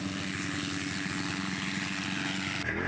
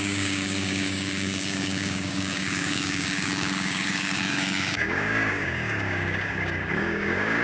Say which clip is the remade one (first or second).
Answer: second